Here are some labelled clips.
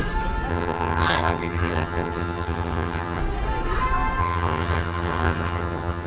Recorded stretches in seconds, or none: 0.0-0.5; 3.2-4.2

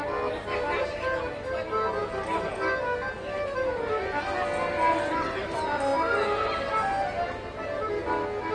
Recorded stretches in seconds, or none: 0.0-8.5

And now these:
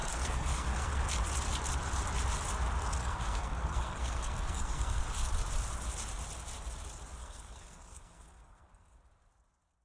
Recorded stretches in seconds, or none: 1.0-3.0; 5.0-7.2; 9.0-9.8

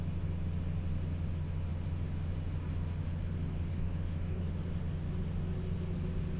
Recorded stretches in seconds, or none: 0.0-3.7; 4.5-6.4

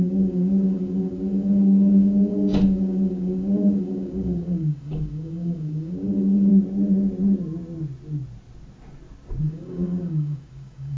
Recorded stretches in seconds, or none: 6.5-9.4

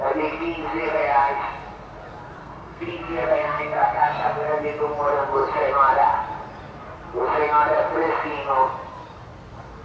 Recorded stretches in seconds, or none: 0.0-2.4; 4.6-9.8

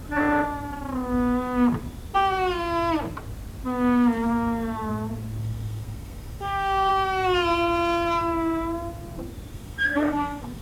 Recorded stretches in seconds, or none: 0.0-5.4; 6.9-9.5